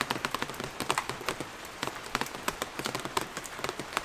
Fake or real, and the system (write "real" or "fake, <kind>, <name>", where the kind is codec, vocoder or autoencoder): fake, vocoder, BigVGAN v2